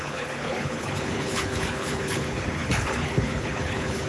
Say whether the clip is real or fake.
fake